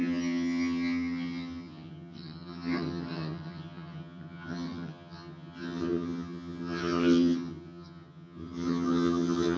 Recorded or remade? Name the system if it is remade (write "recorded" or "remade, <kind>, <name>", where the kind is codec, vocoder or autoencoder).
remade, vocoder, HiFi-GAN